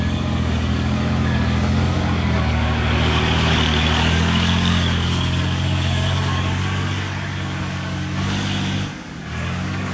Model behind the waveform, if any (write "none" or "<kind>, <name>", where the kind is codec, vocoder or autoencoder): codec, DAC